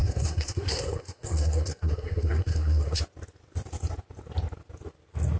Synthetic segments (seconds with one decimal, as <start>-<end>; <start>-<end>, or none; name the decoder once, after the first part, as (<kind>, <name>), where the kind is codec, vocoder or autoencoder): 0.0-3.0 (codec, SNAC)